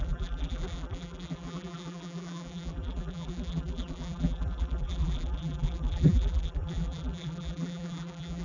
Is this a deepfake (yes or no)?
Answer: yes